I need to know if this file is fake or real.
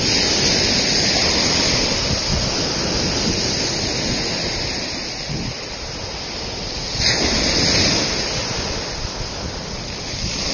real